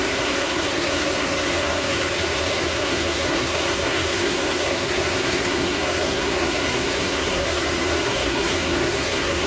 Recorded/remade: remade